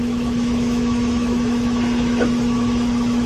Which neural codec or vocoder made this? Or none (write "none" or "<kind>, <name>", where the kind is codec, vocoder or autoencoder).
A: autoencoder, DAC-VAE